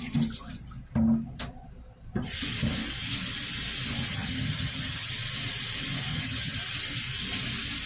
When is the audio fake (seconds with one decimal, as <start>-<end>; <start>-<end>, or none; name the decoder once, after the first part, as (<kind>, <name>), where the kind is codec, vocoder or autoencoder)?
4.1-5.1 (vocoder, HiFi-GAN); 6.1-6.6